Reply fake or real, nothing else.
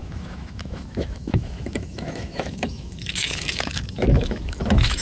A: fake